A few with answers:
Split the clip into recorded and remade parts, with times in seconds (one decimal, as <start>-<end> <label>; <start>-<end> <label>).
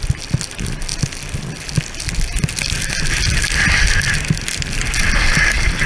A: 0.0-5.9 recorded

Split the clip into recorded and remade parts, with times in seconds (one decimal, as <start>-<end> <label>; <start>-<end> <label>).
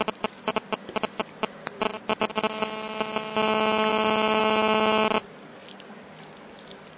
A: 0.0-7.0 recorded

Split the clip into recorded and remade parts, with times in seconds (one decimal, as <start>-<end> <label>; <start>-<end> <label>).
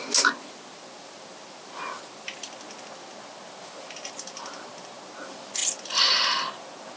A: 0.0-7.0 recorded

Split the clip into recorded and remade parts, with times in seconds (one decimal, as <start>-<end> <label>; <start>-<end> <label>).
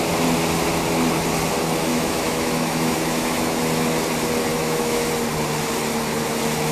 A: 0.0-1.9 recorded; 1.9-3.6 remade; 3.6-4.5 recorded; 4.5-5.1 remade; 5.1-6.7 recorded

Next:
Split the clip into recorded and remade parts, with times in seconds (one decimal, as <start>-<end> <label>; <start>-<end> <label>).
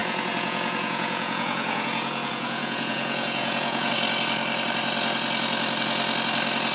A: 0.0-3.9 remade; 3.9-6.7 recorded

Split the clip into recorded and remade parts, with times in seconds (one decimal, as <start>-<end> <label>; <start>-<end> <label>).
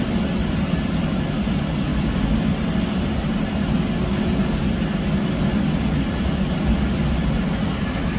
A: 0.0-8.2 recorded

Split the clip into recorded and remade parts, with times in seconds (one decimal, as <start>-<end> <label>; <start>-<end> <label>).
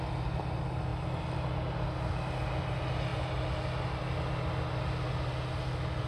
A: 0.0-6.1 recorded